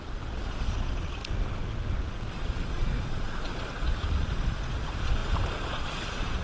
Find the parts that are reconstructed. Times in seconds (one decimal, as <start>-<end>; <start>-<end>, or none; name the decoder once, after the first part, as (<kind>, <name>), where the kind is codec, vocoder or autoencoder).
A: 0.0-1.2 (vocoder, Vocos); 2.1-6.4